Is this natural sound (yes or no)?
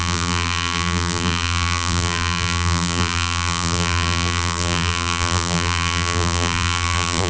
no